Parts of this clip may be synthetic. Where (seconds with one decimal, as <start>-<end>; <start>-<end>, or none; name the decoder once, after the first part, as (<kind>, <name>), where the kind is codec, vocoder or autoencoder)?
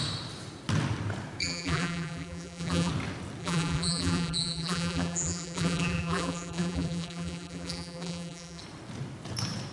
1.4-2.9 (vocoder, BigVGAN v2); 3.4-8.6